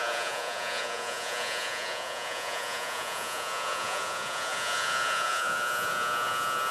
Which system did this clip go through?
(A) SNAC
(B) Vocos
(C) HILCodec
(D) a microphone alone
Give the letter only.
B